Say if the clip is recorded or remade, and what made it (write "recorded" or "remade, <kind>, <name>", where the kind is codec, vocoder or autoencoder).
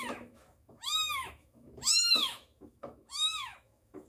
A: remade, autoencoder, DAC-VAE